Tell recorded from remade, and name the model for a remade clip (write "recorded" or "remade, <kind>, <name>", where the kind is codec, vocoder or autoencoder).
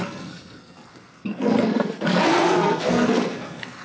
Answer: remade, codec, SNAC